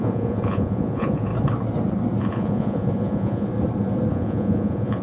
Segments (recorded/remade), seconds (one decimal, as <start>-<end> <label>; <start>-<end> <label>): 0.0-1.3 remade; 1.3-2.2 recorded; 2.2-3.5 remade; 3.5-4.1 recorded; 4.1-5.0 remade